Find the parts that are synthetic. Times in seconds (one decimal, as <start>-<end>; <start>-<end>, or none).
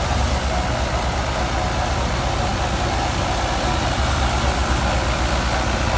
none